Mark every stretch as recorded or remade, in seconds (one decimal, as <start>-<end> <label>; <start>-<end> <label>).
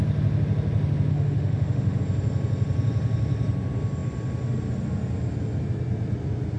0.0-1.1 recorded; 1.1-2.0 remade; 2.0-6.6 recorded